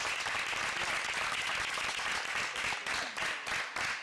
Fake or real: real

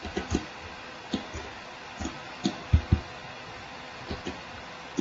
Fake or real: real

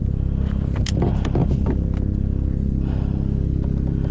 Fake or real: real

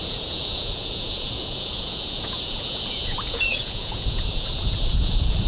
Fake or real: fake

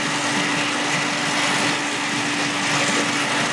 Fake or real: real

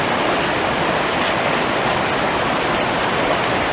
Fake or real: real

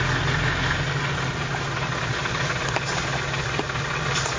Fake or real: real